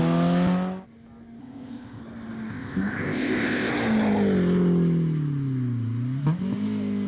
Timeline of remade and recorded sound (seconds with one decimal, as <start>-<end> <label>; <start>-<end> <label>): 0.0-1.4 recorded; 1.4-2.0 remade; 2.0-2.5 recorded; 2.5-3.7 remade; 3.7-7.1 recorded